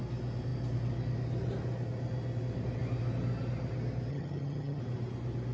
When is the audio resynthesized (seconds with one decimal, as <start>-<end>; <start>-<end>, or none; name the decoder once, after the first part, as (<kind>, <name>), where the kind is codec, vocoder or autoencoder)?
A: 4.1-4.8 (vocoder, HiFi-GAN)